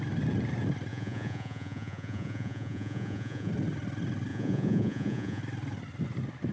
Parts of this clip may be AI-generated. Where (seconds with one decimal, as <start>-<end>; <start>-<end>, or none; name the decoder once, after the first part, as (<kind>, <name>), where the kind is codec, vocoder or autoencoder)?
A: 0.9-3.5 (vocoder, Vocos); 4.3-5.4